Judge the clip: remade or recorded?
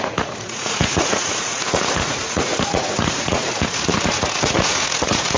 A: remade